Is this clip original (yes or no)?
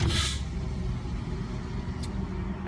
yes